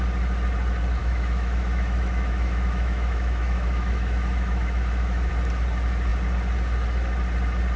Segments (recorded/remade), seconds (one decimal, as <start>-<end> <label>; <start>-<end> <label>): 0.0-1.0 recorded; 1.0-5.3 remade; 5.3-7.8 recorded